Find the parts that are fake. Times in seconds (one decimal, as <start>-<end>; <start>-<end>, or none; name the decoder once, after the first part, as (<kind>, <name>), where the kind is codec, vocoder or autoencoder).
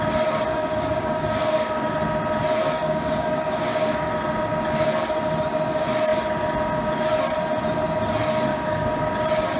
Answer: 0.5-1.9 (codec, DAC); 2.6-4.1; 8.5-9.0